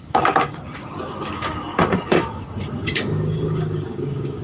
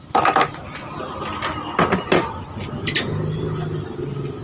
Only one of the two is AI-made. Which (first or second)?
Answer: first